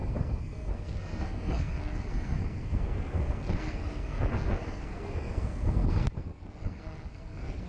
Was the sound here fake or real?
fake